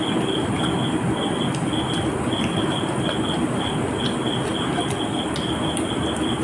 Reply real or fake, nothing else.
real